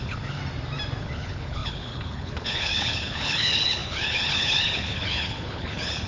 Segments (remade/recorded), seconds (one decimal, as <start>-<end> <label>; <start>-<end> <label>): 0.0-0.4 remade; 0.4-1.0 recorded; 1.0-6.1 remade